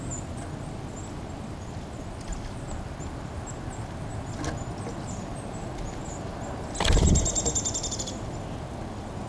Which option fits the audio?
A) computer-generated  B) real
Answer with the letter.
B